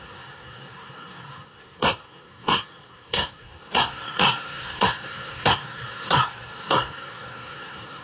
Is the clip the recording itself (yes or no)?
no